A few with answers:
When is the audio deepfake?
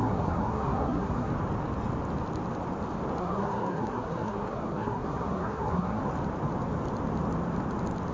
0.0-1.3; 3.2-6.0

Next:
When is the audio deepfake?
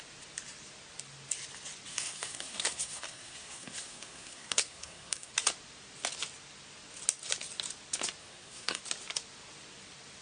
1.9-5.3; 8.2-8.8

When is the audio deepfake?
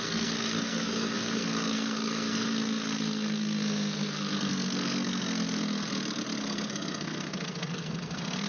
0.0-5.9; 6.4-8.5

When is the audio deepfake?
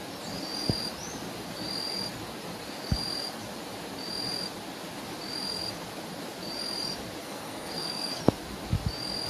7.2-8.2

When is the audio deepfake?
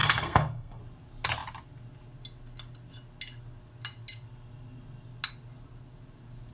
0.0-0.8